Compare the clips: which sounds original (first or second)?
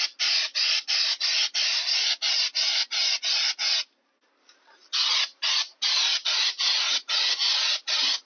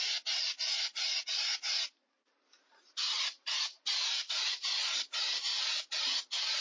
first